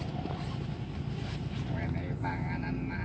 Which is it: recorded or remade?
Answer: recorded